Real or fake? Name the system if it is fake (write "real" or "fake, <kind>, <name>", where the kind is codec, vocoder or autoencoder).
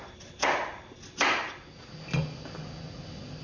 real